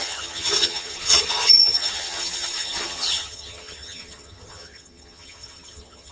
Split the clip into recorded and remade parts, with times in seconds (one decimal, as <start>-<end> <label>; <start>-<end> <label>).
0.0-6.1 remade